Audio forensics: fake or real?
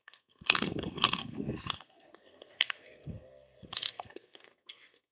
fake